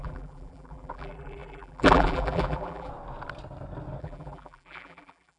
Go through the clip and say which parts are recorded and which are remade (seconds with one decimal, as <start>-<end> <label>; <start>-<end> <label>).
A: 0.0-2.9 remade; 2.9-4.0 recorded; 4.0-5.4 remade